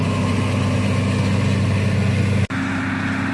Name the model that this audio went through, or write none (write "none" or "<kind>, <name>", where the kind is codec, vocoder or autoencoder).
none